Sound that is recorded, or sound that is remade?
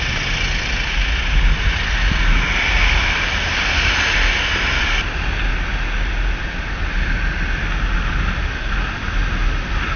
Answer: recorded